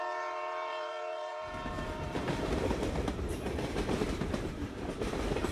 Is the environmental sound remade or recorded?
remade